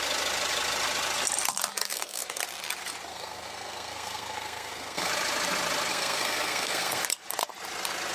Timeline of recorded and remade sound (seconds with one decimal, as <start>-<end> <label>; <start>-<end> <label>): 0.0-1.9 recorded; 1.9-2.4 remade; 2.4-3.1 recorded; 3.1-5.1 remade; 5.1-5.9 recorded; 5.9-7.0 remade; 7.0-8.1 recorded